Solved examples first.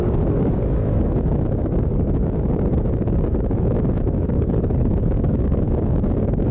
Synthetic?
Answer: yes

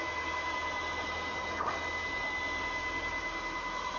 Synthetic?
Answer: no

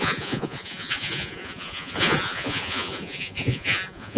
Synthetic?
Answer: yes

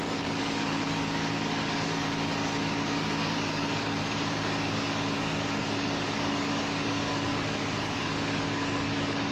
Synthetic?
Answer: yes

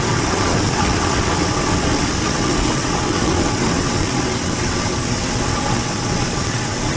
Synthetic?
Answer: yes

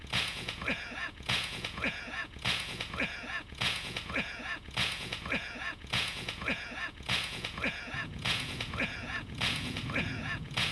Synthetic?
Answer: yes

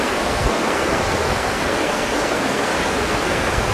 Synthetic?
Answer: yes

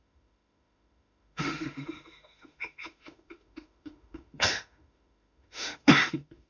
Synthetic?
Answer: yes